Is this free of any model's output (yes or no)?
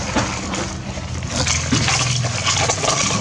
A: yes